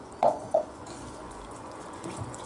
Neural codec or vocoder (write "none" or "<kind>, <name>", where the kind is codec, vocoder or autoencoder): vocoder, Vocos